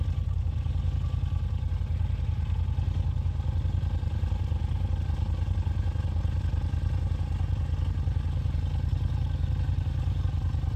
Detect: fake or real real